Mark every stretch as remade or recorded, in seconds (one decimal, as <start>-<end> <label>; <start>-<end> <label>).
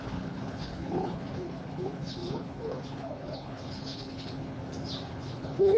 0.0-4.6 remade; 4.6-5.1 recorded; 5.1-5.8 remade